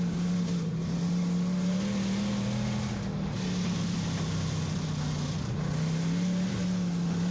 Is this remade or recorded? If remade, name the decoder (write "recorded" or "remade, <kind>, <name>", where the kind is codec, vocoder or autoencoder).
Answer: recorded